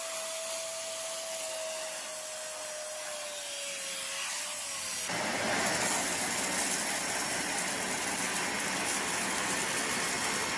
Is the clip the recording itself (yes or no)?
yes